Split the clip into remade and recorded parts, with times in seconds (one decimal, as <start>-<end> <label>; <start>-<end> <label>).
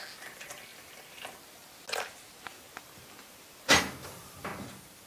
0.0-5.1 recorded